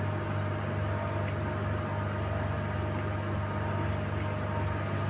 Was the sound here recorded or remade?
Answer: recorded